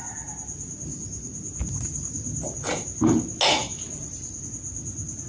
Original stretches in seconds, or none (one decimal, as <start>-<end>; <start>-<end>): 0.0-1.6; 2.5-5.3